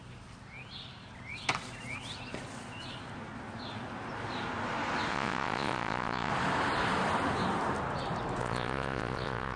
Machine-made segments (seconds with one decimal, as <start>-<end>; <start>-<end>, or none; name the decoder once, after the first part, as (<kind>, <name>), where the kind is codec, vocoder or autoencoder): 5.1-6.3 (vocoder, Vocos); 8.4-9.6